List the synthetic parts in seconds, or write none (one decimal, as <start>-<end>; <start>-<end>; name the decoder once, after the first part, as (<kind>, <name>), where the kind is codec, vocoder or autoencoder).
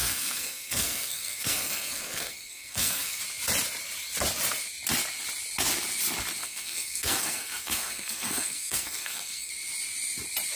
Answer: 0.0-3.2 (codec, SNAC); 6.4-9.5